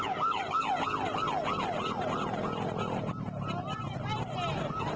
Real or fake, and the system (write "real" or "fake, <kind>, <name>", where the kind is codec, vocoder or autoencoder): real